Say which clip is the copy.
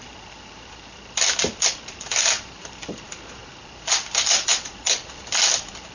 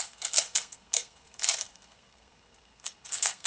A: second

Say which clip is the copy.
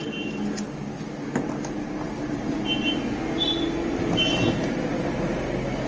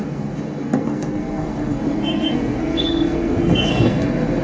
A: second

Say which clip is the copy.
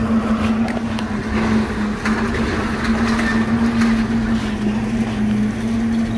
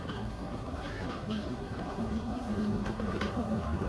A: second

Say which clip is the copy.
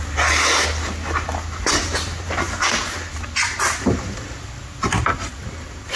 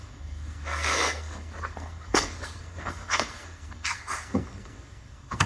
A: second